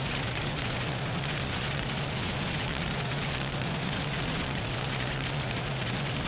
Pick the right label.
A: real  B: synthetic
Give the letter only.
B